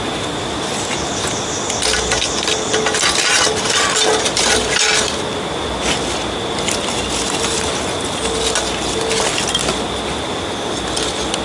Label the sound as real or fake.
real